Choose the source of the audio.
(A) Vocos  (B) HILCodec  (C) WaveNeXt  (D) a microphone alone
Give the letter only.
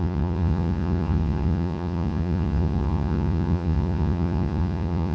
A